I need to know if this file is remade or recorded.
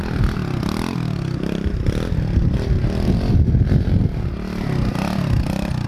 recorded